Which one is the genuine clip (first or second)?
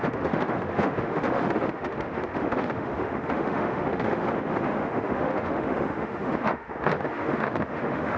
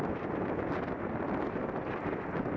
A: second